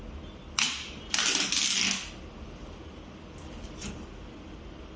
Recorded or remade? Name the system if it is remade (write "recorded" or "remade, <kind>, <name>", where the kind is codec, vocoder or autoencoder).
recorded